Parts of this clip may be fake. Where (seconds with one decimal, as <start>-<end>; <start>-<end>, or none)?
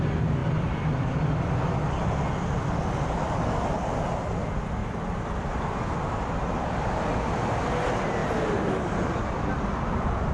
4.8-5.5